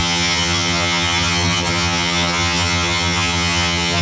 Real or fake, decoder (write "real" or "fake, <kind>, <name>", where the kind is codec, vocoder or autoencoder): fake, vocoder, HiFi-GAN